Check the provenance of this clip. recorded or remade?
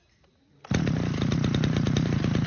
recorded